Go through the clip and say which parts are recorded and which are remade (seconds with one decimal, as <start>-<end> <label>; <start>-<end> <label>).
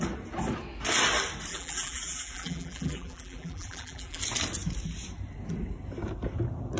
0.0-1.5 recorded; 1.5-4.2 remade; 4.2-6.8 recorded